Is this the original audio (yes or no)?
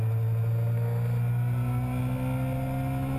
yes